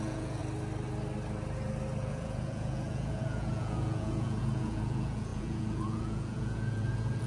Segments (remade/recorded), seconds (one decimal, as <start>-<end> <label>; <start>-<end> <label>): 0.0-0.4 remade; 0.4-2.0 recorded; 2.0-7.3 remade